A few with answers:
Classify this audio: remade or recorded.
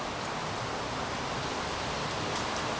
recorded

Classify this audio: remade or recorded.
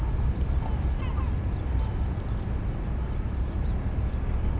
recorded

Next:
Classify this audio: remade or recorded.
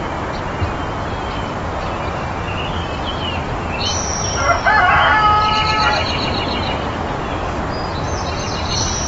recorded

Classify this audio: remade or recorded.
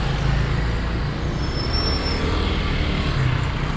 recorded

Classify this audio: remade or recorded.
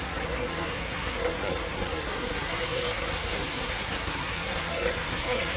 remade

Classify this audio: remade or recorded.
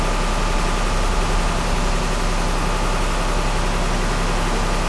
recorded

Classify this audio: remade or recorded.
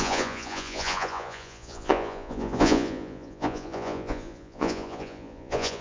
remade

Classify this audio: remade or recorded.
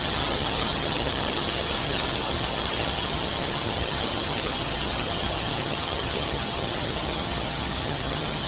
remade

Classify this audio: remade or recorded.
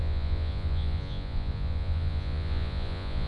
remade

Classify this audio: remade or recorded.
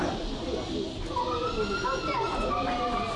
recorded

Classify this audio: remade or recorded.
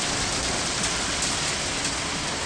recorded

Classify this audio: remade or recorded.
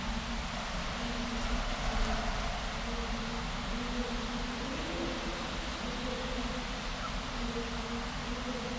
recorded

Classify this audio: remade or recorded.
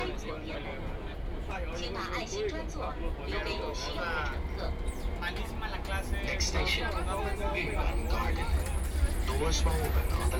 recorded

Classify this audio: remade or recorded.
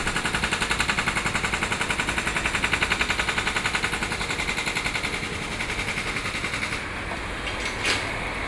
recorded